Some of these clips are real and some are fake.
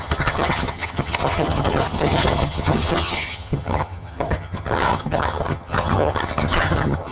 fake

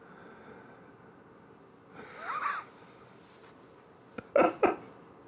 real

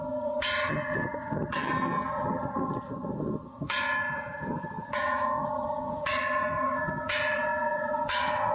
fake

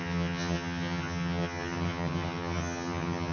fake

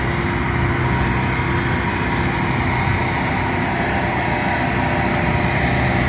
real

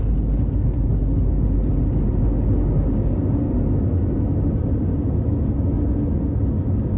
real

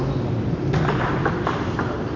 real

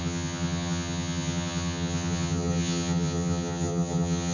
fake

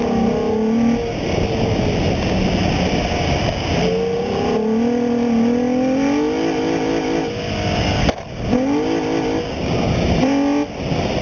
real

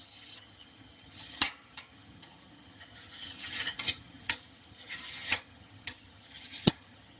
fake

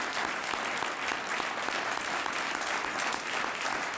real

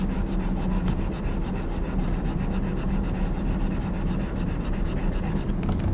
real